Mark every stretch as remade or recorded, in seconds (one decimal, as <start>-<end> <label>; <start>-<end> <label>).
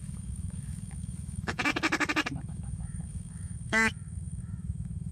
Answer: 0.0-1.7 remade; 1.7-2.4 recorded; 2.4-5.1 remade